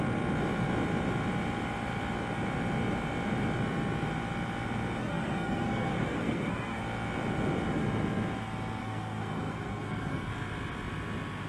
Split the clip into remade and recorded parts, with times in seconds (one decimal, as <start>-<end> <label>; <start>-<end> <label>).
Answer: 0.0-5.0 recorded; 5.0-6.8 remade; 6.8-8.8 recorded; 8.8-10.3 remade; 10.3-11.5 recorded